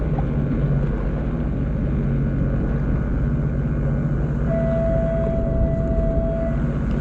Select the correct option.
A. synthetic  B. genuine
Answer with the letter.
B